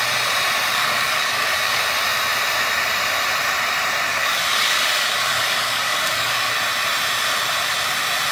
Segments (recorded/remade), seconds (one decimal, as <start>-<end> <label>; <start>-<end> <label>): 0.0-0.7 recorded; 0.7-1.8 remade; 1.8-4.1 recorded; 4.1-6.5 remade; 6.5-8.3 recorded